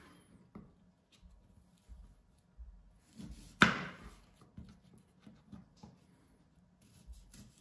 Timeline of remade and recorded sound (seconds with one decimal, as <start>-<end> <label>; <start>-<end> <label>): 0.0-7.6 recorded